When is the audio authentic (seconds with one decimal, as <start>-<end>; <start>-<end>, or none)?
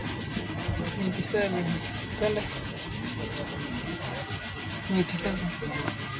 0.0-6.2